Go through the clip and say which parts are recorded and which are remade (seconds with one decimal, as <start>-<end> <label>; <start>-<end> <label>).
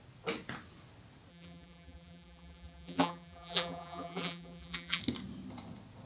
0.0-1.3 recorded; 1.3-5.0 remade; 5.0-6.1 recorded